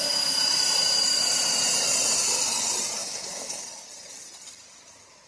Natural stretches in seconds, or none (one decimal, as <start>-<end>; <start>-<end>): 0.0-3.0; 3.6-5.3